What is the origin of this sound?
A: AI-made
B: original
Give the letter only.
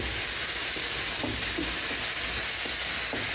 B